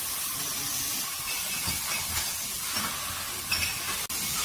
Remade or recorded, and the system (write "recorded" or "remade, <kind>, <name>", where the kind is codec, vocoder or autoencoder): recorded